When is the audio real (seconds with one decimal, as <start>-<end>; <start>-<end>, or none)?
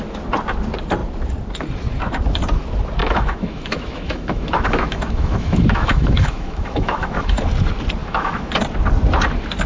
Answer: 0.0-3.0; 7.4-8.0; 8.5-9.7